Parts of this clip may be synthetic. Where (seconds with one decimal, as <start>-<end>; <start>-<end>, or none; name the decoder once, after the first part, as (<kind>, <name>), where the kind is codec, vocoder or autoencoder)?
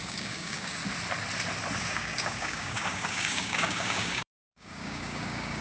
0.0-0.8 (codec, DAC); 1.9-5.6